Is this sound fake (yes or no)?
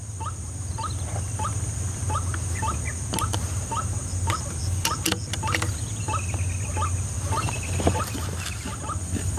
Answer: no